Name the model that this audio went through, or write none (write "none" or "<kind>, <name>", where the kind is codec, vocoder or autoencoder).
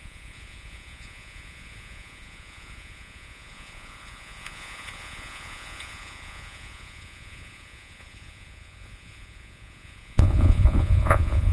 vocoder, Vocos